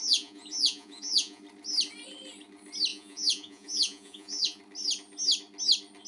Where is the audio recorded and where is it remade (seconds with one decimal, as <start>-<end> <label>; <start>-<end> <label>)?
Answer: 0.0-1.4 remade; 1.4-2.9 recorded; 2.9-4.6 remade; 4.6-6.1 recorded